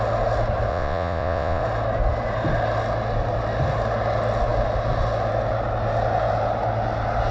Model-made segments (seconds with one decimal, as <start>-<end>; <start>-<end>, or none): 0.7-1.6